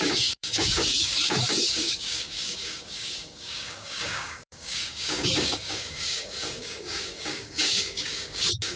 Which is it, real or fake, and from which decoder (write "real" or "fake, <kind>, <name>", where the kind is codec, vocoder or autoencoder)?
fake, codec, DAC